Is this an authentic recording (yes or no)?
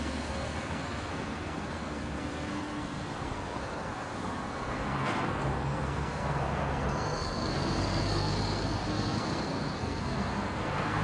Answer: no